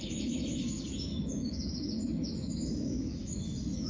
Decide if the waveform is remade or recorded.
remade